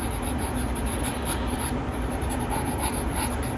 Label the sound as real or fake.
real